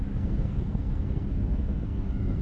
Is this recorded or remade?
remade